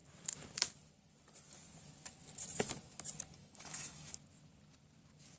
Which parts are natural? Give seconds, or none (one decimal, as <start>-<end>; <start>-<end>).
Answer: 0.0-3.4; 4.1-5.4